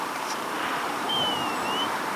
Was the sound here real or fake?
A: fake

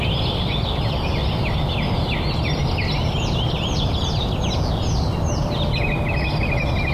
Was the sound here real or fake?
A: real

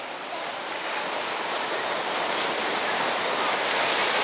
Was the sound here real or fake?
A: real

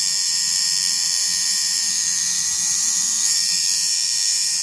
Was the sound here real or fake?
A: fake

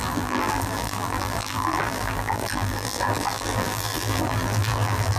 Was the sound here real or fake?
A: fake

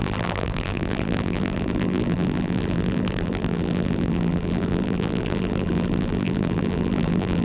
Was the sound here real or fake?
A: fake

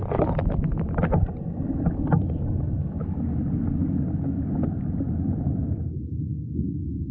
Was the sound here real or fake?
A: real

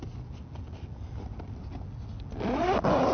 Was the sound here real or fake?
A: real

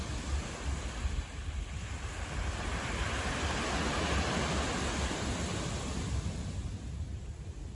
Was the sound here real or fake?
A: real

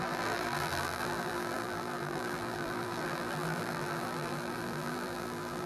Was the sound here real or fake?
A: fake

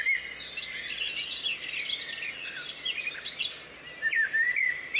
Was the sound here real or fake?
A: real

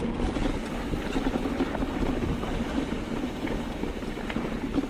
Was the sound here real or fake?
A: real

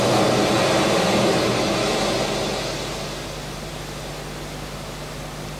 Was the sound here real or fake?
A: real